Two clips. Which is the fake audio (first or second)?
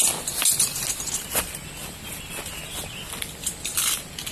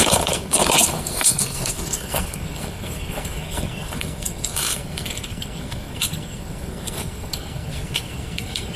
second